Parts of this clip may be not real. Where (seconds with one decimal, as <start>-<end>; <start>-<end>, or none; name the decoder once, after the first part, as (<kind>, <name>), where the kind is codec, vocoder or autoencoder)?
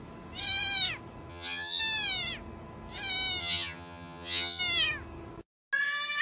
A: 1.3-1.8 (vocoder, HiFi-GAN); 3.4-4.6